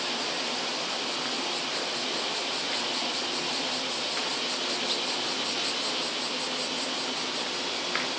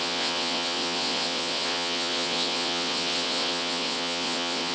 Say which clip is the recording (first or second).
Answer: first